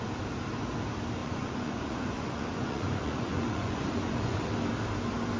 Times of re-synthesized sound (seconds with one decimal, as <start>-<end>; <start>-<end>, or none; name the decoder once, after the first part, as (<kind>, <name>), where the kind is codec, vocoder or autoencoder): 1.2-4.4 (vocoder, Vocos)